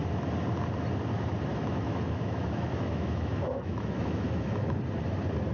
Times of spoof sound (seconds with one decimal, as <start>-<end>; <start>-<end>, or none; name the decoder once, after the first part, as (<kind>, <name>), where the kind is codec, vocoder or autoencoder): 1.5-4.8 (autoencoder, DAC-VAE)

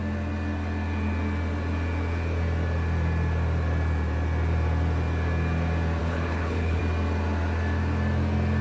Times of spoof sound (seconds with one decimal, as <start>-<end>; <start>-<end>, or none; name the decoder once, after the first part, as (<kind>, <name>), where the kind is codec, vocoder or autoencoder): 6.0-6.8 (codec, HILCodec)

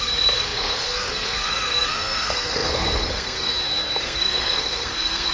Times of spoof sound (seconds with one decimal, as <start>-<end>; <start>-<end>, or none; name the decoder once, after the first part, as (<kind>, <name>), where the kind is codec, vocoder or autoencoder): 0.0-3.5 (codec, SNAC); 4.0-5.3